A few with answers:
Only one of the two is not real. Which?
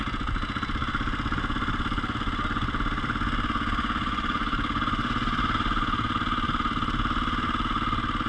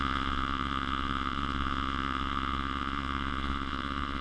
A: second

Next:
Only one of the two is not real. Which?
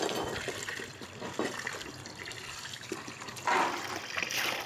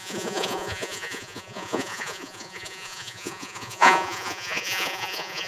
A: second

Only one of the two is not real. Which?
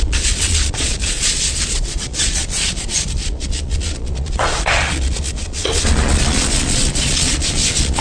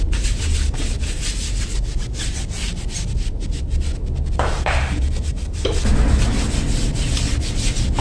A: first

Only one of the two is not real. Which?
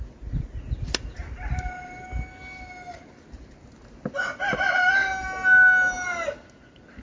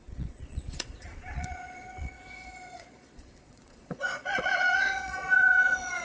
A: second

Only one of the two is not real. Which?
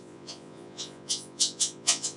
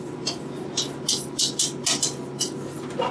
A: first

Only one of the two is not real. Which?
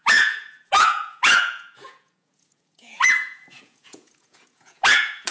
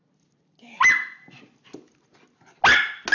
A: first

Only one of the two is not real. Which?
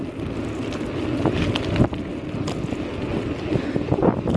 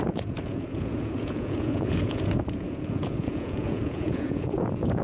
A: second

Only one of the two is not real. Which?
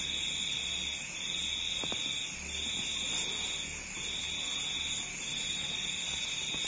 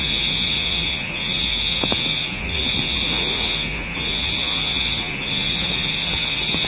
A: second